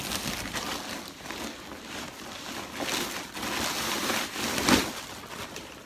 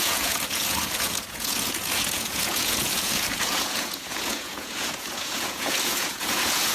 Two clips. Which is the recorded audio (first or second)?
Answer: first